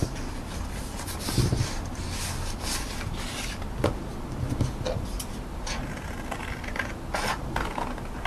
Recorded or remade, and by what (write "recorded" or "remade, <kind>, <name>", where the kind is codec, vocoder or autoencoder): recorded